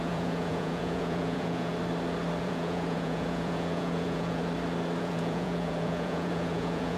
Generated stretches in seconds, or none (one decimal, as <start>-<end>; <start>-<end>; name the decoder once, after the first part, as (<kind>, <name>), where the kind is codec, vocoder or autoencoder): 0.0-1.7 (vocoder, Vocos); 2.4-4.4; 5.0-7.0